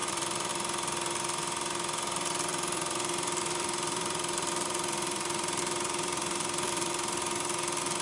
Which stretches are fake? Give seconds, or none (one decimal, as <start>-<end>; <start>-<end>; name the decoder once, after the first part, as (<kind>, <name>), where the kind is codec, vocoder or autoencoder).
0.0-0.5 (vocoder, BigVGAN v2); 2.5-6.9